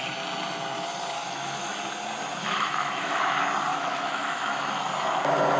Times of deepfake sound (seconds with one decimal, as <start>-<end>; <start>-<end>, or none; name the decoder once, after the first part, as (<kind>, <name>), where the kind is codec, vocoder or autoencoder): 1.2-1.8 (autoencoder, DAC-VAE); 2.4-3.2; 3.7-4.9